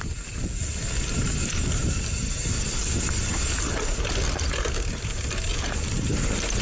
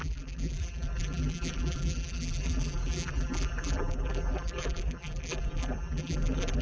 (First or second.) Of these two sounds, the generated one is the second